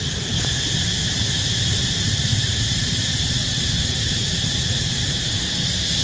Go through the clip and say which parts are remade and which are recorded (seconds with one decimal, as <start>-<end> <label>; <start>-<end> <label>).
0.0-2.3 recorded; 2.3-6.0 remade